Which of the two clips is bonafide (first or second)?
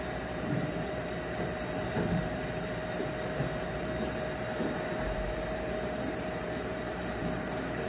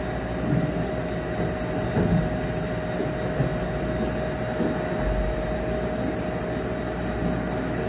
second